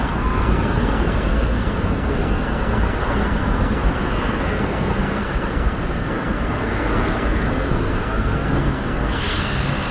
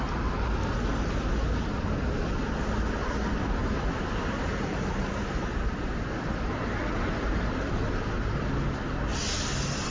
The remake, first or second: first